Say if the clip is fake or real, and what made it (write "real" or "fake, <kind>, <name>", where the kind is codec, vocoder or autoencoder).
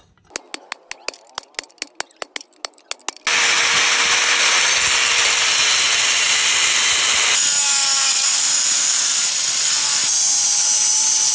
real